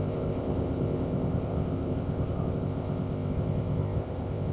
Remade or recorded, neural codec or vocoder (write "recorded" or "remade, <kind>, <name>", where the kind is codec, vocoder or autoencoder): remade, codec, ZipCodec